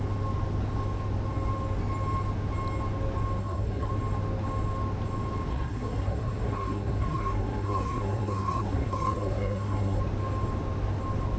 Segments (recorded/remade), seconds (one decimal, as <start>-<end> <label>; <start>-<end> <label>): 0.0-3.4 recorded; 3.4-3.9 remade; 3.9-5.5 recorded; 5.5-10.0 remade; 10.0-11.4 recorded